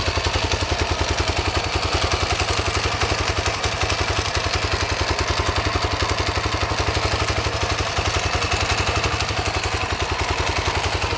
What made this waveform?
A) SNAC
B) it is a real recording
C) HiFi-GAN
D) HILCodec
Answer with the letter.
B